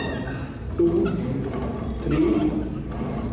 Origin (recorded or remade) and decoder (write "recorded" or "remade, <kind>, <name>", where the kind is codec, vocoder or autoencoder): recorded